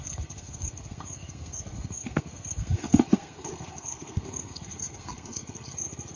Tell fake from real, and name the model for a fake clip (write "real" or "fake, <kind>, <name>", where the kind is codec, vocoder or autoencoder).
fake, codec, SNAC